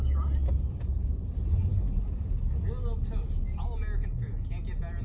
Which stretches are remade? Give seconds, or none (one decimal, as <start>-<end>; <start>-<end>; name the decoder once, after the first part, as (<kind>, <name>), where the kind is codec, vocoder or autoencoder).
0.4-1.1 (vocoder, Vocos); 1.7-2.3